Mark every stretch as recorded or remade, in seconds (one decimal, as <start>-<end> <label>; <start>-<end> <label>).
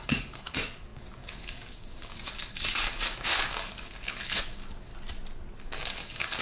0.0-4.9 remade; 4.9-5.6 recorded; 5.6-6.4 remade